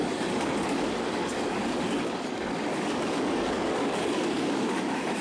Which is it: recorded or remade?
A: remade